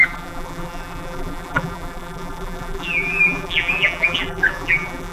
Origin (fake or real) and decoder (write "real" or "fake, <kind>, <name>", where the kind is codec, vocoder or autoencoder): fake, vocoder, BigVGAN v2